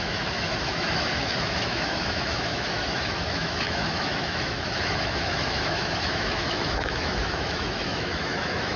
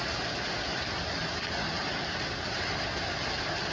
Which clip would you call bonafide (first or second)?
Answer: second